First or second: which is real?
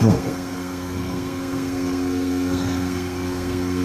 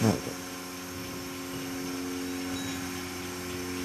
second